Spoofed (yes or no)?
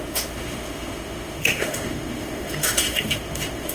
yes